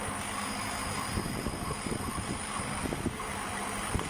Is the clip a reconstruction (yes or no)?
no